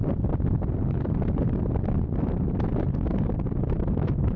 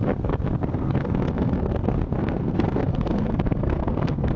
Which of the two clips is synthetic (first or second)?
second